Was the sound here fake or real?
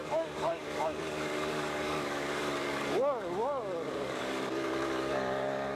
fake